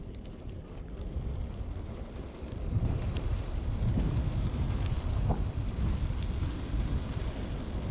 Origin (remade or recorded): recorded